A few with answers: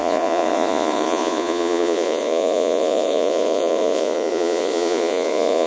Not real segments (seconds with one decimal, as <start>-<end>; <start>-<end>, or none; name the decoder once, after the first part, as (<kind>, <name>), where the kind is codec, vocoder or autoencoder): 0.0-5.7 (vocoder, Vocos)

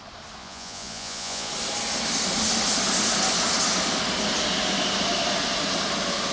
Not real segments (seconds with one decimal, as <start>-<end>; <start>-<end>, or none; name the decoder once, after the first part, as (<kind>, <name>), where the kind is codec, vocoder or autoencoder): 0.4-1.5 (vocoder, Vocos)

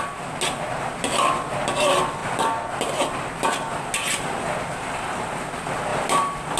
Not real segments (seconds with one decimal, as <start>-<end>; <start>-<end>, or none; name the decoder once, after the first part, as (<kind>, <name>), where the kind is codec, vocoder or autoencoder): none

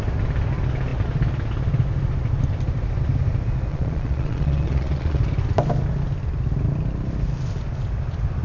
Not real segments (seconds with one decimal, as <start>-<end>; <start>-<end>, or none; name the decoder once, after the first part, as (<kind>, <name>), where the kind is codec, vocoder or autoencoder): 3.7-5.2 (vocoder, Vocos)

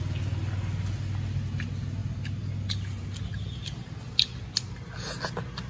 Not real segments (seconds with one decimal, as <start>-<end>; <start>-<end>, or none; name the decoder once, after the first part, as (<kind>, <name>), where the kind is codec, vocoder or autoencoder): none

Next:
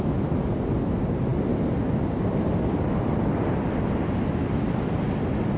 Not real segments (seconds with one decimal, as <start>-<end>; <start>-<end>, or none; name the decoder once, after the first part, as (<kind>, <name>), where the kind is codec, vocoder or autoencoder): none

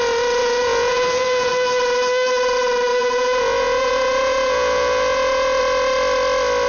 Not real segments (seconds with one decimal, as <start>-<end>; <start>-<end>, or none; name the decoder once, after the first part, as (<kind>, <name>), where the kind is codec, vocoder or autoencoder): 0.4-1.5 (vocoder, Vocos); 2.9-5.6